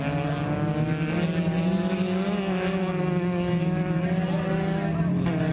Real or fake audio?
real